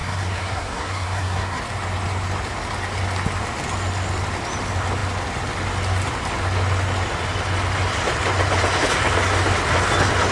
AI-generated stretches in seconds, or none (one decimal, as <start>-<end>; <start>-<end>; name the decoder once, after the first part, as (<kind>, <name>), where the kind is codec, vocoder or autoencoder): 0.0-1.6 (codec, SNAC)